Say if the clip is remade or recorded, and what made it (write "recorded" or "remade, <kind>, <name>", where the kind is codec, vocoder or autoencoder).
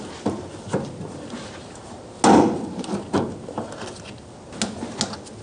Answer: recorded